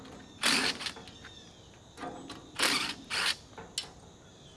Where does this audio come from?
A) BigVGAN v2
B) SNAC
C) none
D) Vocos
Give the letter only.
C